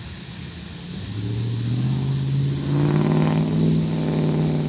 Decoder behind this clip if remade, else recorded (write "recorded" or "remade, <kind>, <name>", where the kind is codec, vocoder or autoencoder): recorded